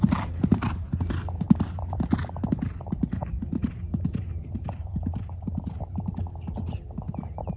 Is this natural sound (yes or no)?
no